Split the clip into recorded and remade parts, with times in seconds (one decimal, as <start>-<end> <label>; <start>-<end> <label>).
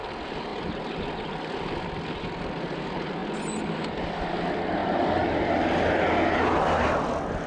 0.0-7.5 recorded